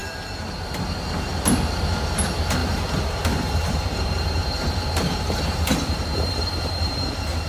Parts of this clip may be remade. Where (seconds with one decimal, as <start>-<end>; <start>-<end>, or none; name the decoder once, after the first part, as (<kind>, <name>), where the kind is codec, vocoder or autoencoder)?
0.0-0.7 (vocoder, BigVGAN v2); 2.6-7.1